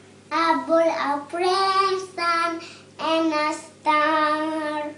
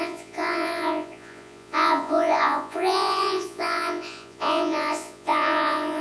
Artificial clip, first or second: second